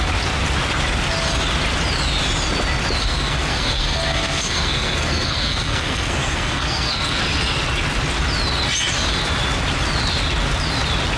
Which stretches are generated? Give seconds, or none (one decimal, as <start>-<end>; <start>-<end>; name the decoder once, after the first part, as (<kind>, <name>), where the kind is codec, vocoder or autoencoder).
3.0-7.2 (codec, SNAC)